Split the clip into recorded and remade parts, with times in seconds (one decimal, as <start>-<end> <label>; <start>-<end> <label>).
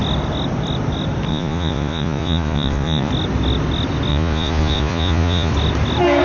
0.0-1.3 recorded; 1.3-3.1 remade; 3.1-4.1 recorded; 4.1-5.5 remade; 5.5-6.2 recorded